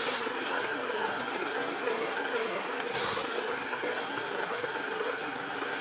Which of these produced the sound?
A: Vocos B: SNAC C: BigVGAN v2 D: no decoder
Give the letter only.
B